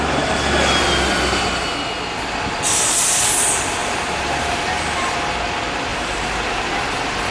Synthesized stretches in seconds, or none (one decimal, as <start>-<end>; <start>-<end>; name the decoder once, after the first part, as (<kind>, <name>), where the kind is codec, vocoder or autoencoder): 3.8-4.6 (vocoder, BigVGAN v2); 5.9-6.7